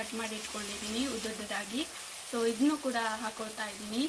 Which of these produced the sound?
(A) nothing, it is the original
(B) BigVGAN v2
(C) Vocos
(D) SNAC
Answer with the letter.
A